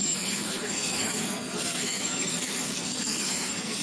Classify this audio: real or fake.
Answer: fake